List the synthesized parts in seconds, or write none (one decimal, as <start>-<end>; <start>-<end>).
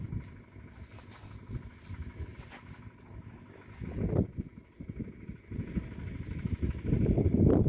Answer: none